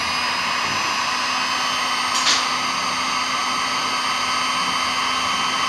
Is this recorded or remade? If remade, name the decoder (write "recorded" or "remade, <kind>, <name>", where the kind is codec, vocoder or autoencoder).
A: recorded